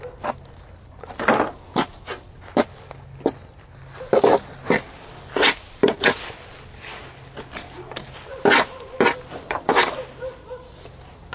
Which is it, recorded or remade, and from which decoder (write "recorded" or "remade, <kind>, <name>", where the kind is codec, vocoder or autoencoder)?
recorded